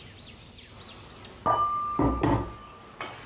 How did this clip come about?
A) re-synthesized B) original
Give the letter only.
B